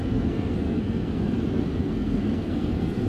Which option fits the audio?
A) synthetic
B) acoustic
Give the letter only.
A